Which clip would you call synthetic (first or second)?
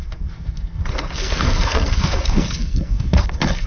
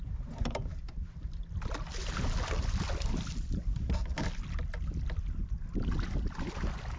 first